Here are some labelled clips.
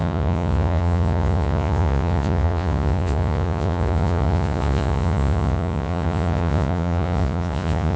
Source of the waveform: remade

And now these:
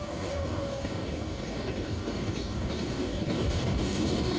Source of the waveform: remade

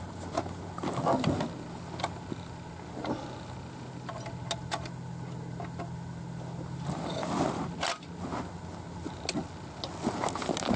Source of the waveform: recorded